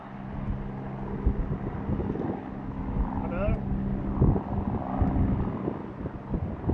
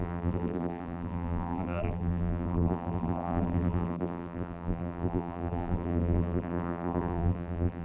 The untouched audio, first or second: first